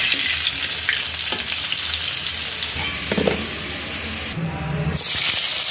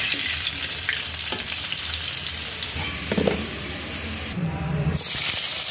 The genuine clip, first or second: first